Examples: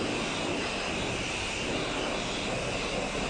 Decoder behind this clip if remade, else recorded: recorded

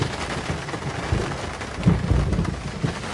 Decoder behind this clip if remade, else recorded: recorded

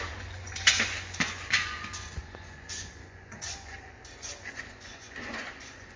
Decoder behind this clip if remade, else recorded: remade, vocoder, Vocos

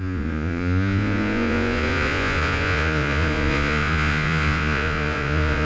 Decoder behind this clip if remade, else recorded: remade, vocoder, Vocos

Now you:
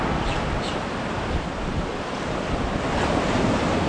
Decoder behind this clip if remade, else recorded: recorded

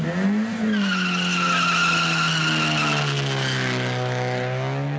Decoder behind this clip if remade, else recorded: recorded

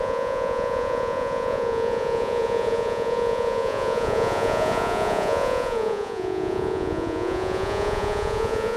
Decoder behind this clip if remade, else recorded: remade, vocoder, Vocos